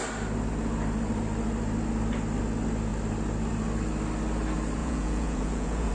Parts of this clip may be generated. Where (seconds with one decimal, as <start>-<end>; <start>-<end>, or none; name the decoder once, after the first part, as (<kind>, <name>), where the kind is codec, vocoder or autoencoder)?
4.8-5.9 (vocoder, Vocos)